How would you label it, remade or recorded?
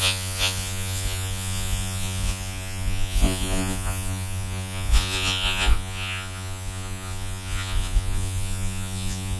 remade